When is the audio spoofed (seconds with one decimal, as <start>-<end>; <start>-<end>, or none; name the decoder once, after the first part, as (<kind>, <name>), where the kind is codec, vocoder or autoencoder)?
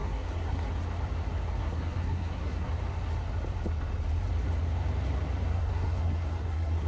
0.0-0.7 (codec, SNAC); 1.6-2.7; 5.5-6.9